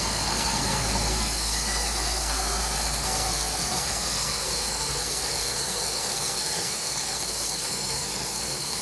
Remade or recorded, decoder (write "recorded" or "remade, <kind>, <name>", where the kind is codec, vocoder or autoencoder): remade, codec, SNAC